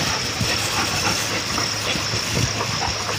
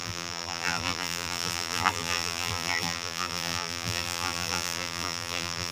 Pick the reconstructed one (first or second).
second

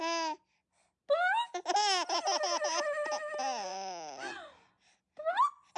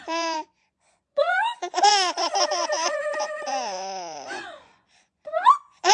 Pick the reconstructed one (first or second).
second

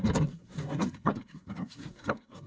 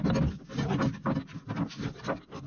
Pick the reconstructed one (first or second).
first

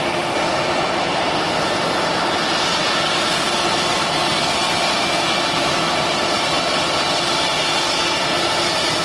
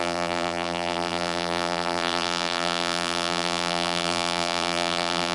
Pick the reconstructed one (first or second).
second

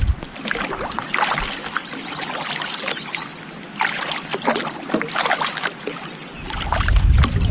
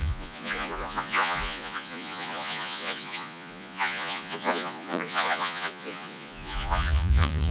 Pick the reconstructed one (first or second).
second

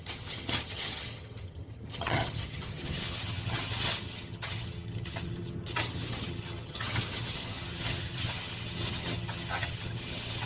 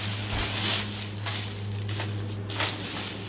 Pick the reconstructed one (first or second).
first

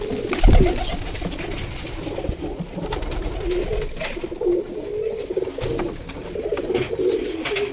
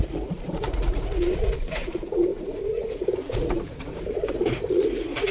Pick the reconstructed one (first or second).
second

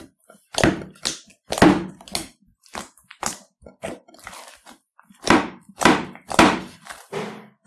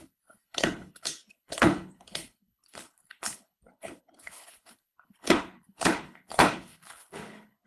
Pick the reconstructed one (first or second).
second